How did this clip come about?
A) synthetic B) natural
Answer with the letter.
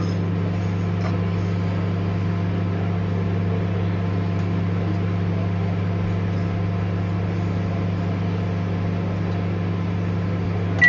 B